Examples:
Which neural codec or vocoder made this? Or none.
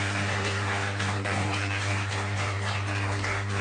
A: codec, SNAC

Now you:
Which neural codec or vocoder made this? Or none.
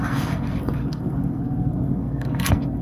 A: codec, SNAC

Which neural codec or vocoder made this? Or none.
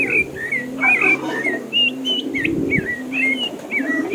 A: none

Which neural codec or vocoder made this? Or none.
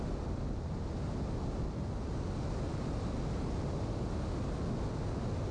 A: none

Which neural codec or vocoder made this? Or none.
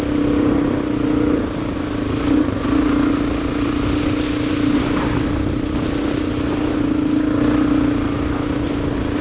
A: none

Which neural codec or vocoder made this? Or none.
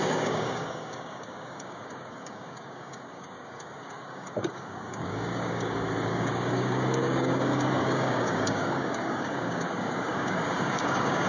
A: codec, DAC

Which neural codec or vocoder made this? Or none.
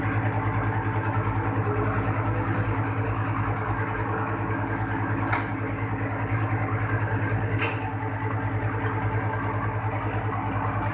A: none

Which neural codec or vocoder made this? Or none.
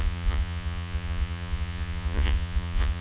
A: vocoder, Vocos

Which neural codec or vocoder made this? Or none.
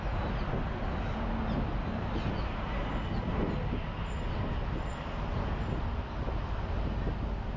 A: none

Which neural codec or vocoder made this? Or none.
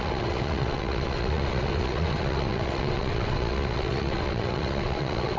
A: vocoder, WaveNeXt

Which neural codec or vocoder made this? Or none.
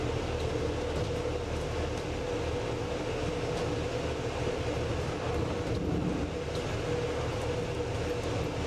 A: none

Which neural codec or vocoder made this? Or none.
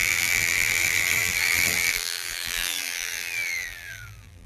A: vocoder, BigVGAN v2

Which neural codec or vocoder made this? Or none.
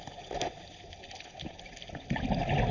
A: none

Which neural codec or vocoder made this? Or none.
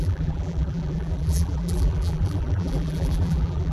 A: vocoder, BigVGAN v2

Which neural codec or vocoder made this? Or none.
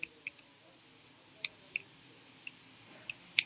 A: none